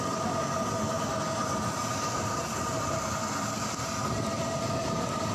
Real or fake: real